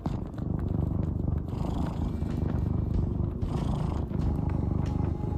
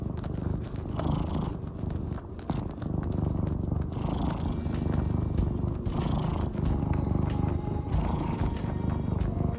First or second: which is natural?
second